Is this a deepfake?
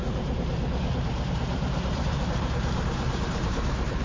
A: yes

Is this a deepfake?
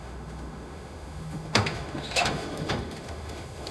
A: yes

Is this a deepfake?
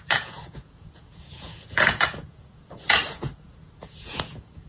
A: yes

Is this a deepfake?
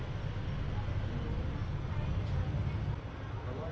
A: no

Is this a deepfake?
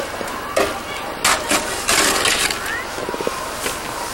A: no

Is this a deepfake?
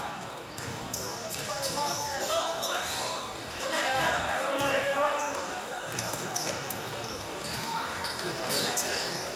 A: yes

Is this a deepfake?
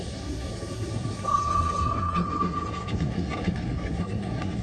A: yes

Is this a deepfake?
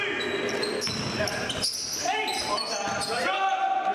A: no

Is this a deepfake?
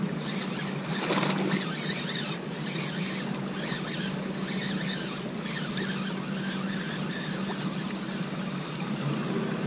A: no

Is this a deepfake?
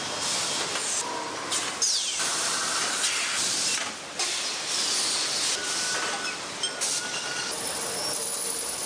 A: no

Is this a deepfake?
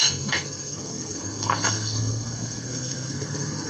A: yes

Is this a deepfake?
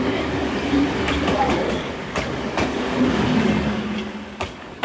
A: yes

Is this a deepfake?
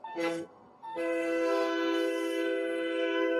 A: yes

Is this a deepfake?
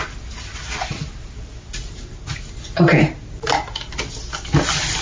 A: no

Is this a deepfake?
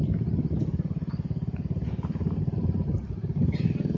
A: yes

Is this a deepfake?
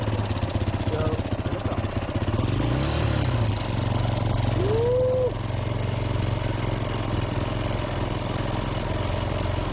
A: no